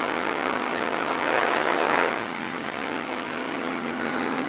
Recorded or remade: remade